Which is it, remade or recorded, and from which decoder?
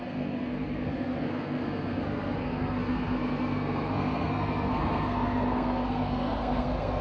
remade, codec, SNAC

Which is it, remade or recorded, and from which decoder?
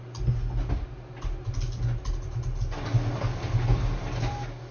recorded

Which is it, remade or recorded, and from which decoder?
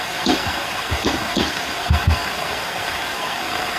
remade, codec, SNAC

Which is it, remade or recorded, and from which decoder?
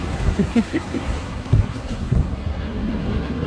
remade, codec, SNAC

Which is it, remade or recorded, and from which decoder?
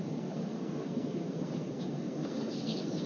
remade, codec, SNAC